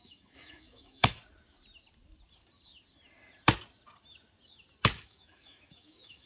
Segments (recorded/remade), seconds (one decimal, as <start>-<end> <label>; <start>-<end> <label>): 0.0-1.2 remade; 1.2-5.0 recorded; 5.0-6.3 remade

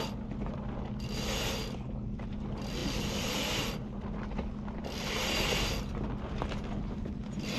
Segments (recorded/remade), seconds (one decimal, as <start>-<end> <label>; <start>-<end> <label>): 0.0-7.6 recorded

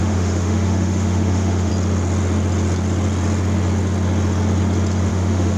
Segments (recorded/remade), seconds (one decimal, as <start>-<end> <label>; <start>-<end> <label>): 0.0-1.7 remade; 1.7-5.1 recorded; 5.1-5.6 remade